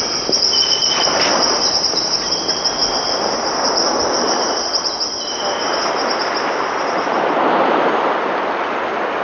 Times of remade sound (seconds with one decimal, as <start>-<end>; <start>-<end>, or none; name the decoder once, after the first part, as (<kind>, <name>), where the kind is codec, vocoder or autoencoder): 0.8-1.9 (vocoder, BigVGAN v2)

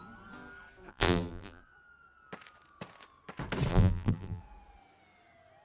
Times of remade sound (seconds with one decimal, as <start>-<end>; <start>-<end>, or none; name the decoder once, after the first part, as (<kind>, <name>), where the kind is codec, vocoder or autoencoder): 0.9-1.6 (vocoder, BigVGAN v2); 3.7-4.4

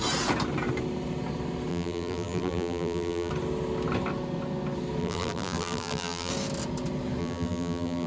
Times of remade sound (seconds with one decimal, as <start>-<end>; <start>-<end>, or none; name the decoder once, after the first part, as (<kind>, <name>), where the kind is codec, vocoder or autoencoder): 1.7-3.3 (vocoder, BigVGAN v2); 5.0-6.3; 7.2-8.1

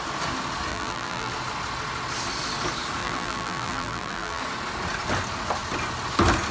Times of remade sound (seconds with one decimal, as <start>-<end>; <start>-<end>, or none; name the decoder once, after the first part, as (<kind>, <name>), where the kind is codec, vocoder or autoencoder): 0.7-1.3 (vocoder, BigVGAN v2); 3.0-4.4